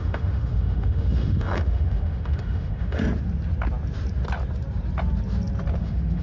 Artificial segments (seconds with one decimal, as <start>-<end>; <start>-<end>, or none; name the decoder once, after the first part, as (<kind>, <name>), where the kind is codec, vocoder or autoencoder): 0.0-3.0 (autoencoder, DAC-VAE); 5.8-6.2